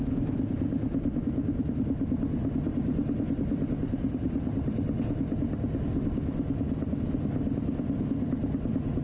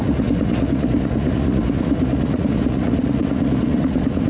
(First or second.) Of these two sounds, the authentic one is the first